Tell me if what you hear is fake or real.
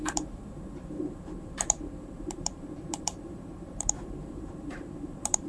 fake